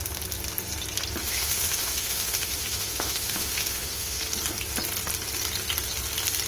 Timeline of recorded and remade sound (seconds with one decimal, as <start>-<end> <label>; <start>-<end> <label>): 0.0-1.2 recorded; 1.2-4.2 remade; 4.2-6.5 recorded